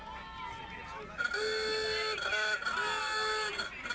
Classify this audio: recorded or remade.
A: recorded